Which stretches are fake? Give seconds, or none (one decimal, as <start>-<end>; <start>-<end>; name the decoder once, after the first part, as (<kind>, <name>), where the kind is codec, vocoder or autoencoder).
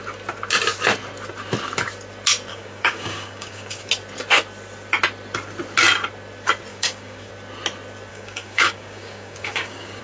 2.5-3.9 (codec, DAC); 6.7-7.3; 8.1-10.0